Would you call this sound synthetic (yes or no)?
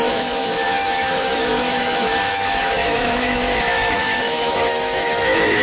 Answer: yes